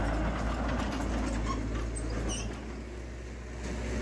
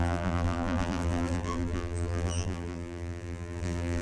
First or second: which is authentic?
first